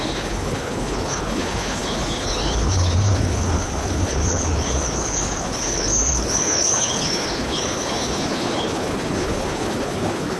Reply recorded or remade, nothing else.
remade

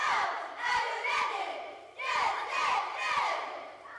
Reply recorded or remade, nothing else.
remade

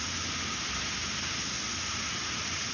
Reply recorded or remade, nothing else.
recorded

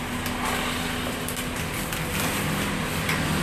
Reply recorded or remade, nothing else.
recorded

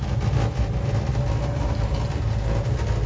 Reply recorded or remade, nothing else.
recorded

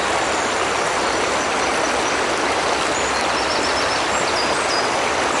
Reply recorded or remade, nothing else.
recorded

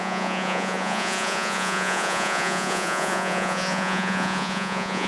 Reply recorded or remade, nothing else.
remade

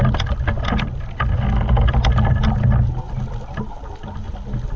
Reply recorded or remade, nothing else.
recorded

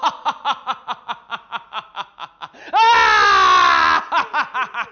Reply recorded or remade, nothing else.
recorded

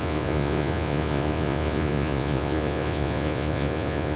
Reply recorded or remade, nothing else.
remade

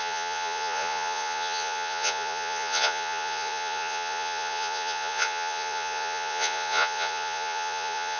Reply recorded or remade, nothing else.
remade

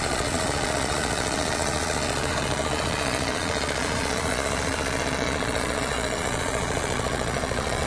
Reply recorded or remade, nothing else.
remade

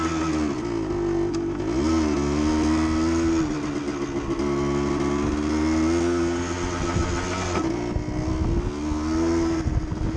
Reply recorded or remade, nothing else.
recorded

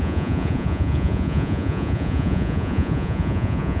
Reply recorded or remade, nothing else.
remade